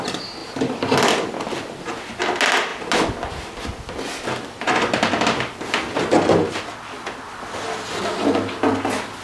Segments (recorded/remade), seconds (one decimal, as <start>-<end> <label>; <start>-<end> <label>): 0.0-9.2 recorded